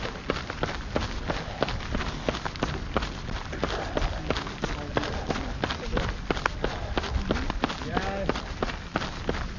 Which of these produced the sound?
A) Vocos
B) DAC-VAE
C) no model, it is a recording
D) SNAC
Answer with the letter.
C